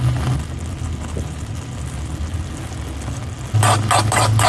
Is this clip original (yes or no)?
yes